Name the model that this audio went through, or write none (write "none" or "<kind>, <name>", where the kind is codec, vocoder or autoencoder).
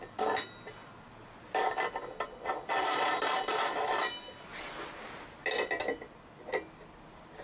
none